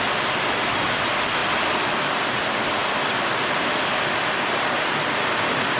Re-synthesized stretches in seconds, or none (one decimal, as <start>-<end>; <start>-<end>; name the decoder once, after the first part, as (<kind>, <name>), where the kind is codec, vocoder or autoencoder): none